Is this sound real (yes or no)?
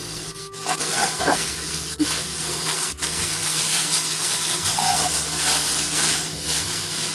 no